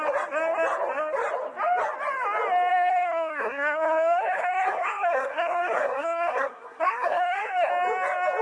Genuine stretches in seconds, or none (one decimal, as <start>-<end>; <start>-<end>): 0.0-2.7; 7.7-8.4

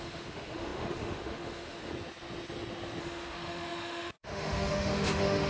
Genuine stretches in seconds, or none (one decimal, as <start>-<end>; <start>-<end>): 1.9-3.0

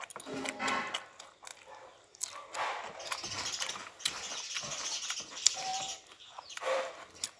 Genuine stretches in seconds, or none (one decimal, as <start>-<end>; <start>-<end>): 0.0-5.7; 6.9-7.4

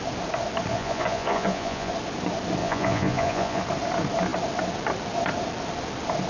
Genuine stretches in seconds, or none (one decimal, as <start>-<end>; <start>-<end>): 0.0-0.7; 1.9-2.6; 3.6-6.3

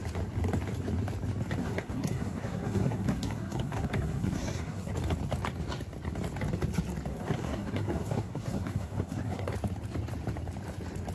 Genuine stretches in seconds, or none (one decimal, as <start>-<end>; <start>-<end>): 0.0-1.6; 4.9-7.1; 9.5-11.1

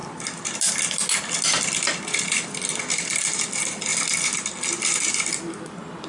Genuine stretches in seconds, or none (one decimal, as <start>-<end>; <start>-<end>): 0.0-6.1